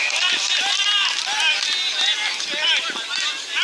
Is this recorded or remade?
recorded